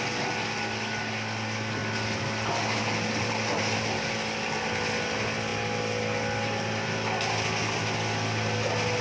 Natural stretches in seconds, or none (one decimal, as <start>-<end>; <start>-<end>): 0.0-9.0